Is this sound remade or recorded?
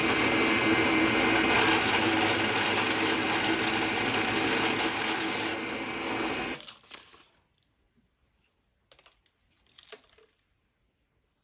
recorded